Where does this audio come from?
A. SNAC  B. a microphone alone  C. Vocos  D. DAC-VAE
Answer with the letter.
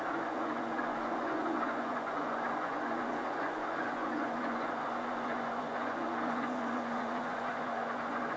C